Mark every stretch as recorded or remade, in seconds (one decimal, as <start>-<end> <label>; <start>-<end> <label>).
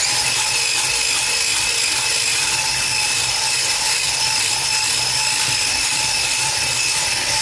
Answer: 0.0-2.1 recorded; 2.1-6.5 remade; 6.5-7.4 recorded